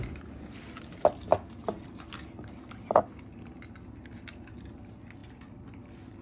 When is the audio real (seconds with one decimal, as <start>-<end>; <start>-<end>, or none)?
0.0-6.2